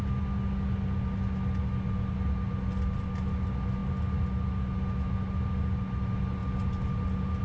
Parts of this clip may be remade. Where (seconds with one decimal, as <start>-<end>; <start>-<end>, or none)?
none